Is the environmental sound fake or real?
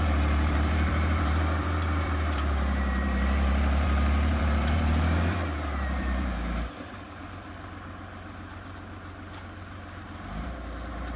fake